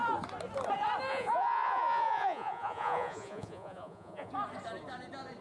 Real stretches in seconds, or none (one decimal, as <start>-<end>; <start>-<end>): 0.0-1.1; 4.3-5.4